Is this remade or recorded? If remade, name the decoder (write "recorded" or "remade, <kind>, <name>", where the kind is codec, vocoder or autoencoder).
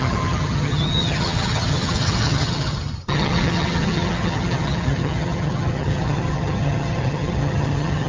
remade, vocoder, HiFi-GAN